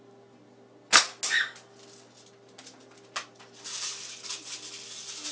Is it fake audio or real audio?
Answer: real